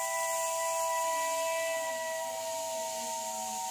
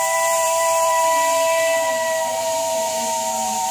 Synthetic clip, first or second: second